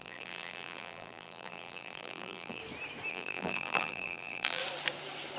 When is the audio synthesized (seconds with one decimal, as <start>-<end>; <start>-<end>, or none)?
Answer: 0.0-2.6; 3.1-4.6